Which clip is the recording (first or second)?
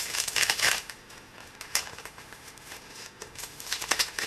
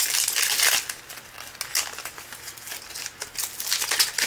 second